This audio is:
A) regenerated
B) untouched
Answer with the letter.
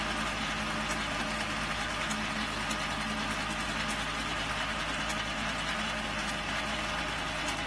B